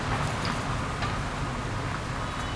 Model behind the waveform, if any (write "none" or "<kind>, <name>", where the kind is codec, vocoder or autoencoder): none